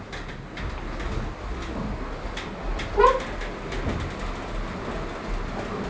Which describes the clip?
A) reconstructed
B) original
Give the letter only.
B